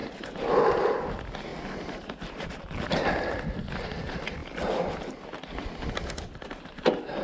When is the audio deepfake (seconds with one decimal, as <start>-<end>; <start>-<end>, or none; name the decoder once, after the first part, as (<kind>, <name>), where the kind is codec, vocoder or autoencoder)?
0.0-0.6 (vocoder, BigVGAN v2); 1.5-2.5

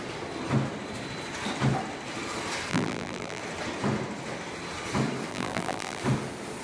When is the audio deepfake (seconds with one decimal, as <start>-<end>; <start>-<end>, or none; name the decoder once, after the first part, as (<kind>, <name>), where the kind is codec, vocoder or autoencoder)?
2.7-3.4 (vocoder, BigVGAN v2); 5.3-6.0

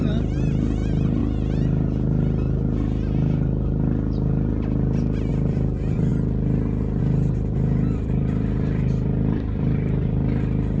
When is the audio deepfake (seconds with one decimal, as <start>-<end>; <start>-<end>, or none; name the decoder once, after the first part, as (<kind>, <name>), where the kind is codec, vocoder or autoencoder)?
0.0-1.2 (vocoder, BigVGAN v2); 5.3-6.1; 7.0-10.8

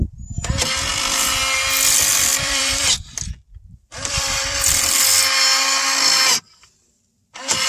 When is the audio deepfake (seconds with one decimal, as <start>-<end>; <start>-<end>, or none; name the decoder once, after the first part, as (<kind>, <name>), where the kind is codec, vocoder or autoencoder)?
0.9-1.4 (vocoder, BigVGAN v2); 2.3-5.0; 6.3-7.7

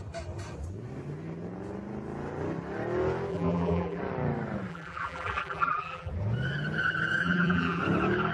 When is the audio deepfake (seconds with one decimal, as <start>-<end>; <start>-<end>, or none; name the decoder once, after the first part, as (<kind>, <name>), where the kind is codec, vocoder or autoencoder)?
3.3-4.0 (vocoder, BigVGAN v2); 4.7-6.1; 7.2-7.8

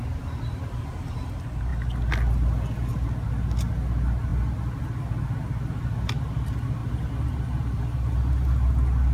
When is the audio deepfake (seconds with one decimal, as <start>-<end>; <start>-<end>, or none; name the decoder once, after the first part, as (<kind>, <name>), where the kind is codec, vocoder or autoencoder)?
none

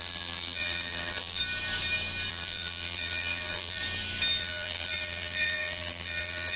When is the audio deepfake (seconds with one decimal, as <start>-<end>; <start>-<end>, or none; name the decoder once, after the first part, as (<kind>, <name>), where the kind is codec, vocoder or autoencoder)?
0.0-1.4 (vocoder, BigVGAN v2); 2.3-3.8; 4.4-6.6